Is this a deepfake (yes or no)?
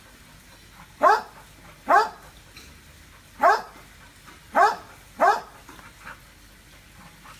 no